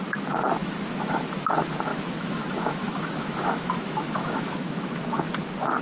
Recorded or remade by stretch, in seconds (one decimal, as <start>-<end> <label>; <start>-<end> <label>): 0.0-0.6 recorded; 0.6-1.5 remade; 1.5-1.9 recorded; 1.9-5.3 remade; 5.3-5.8 recorded